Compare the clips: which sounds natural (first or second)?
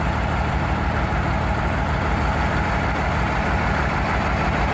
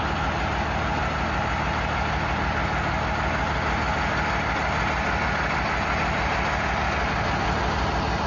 second